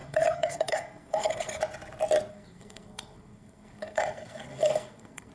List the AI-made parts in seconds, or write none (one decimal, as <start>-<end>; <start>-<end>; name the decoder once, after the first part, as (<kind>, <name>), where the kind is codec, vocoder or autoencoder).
0.0-1.6 (codec, SNAC); 2.3-5.3